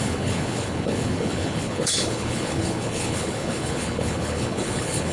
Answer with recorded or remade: remade